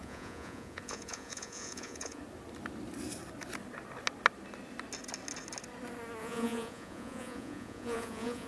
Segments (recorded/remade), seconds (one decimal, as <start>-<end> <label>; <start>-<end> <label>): 0.0-2.2 remade; 2.2-6.2 recorded; 6.2-8.5 remade